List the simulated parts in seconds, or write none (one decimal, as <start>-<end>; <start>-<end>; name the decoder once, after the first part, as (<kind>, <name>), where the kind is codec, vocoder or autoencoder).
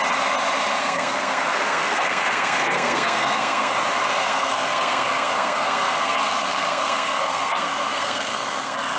0.8-3.7 (codec, SNAC); 4.2-9.0